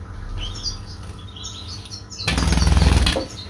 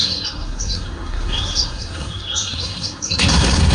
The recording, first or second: first